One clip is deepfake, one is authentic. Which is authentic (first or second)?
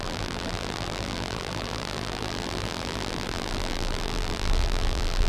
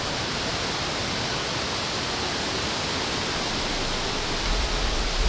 second